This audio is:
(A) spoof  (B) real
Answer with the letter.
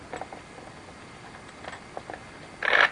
B